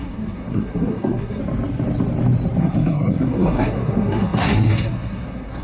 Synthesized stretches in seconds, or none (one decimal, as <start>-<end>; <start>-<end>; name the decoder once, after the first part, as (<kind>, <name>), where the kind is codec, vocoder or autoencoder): 0.0-1.4 (codec, SNAC); 2.6-5.6